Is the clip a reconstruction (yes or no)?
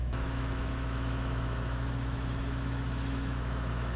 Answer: yes